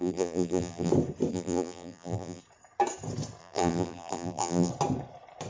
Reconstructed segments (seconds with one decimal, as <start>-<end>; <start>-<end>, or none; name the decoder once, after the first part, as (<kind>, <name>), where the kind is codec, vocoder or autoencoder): 0.0-0.9 (vocoder, BigVGAN v2); 1.3-2.4; 3.4-4.7